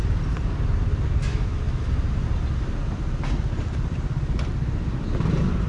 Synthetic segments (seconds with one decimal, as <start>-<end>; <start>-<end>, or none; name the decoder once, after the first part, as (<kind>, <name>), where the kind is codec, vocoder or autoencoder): 1.3-1.9 (autoencoder, DAC-VAE)

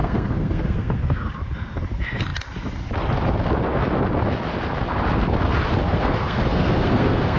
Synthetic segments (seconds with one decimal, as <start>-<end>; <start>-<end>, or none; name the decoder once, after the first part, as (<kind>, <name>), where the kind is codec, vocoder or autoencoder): 0.0-1.3 (codec, SNAC); 5.8-7.4

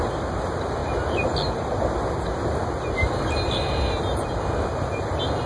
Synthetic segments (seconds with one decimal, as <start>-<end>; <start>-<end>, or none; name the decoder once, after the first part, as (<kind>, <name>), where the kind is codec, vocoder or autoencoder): none

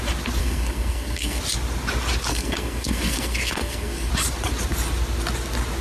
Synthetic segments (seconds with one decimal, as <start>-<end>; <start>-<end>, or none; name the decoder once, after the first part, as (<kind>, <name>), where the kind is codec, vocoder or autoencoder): 0.4-1.4 (codec, SNAC); 2.3-4.1

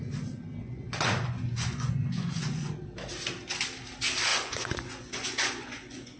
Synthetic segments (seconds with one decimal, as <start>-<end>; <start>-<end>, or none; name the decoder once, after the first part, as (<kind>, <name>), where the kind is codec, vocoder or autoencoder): 0.6-2.7 (vocoder, Vocos); 4.3-6.2

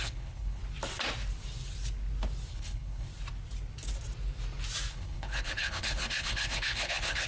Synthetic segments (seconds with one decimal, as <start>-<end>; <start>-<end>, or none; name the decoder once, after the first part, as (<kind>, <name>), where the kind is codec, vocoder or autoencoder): 0.0-0.6 (codec, HILCodec); 2.5-3.1; 4.9-7.3

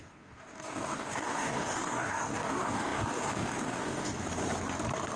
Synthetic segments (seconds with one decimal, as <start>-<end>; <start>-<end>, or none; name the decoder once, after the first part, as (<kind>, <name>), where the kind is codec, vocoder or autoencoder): 0.0-4.1 (codec, DAC)